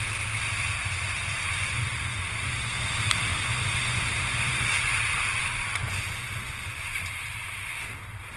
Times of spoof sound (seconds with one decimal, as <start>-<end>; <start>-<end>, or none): 0.8-2.6; 3.3-5.0; 5.4-7.0